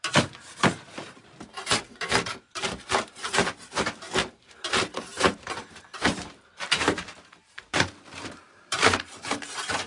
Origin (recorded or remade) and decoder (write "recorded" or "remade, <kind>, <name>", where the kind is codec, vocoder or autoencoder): remade, vocoder, BigVGAN v2